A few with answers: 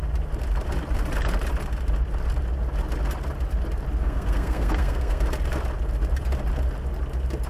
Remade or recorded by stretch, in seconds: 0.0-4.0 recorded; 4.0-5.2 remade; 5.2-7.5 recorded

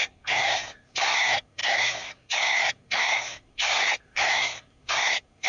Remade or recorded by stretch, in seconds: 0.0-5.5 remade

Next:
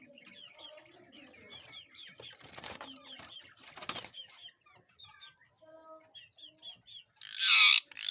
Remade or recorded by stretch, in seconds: 0.0-8.1 recorded

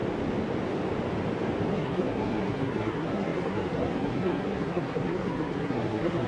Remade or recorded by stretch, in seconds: 0.0-1.7 recorded; 1.7-6.3 remade

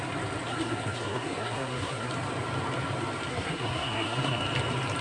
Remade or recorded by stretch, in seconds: 0.0-0.5 recorded; 0.5-2.1 remade; 2.1-3.3 recorded; 3.3-4.4 remade; 4.4-5.0 recorded

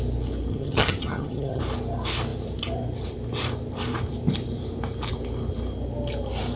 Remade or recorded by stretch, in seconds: 0.0-0.5 recorded; 0.5-1.6 remade; 1.6-6.6 recorded

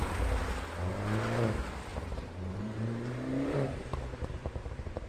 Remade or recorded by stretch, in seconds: 0.0-1.9 recorded; 1.9-5.1 remade

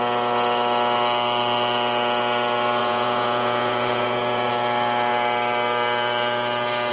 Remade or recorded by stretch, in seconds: 0.0-2.8 recorded; 2.8-4.5 remade; 4.5-6.9 recorded